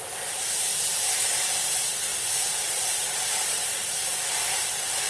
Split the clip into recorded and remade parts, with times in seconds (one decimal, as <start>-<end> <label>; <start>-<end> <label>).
0.0-5.1 recorded